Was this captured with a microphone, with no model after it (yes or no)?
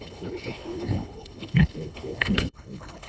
no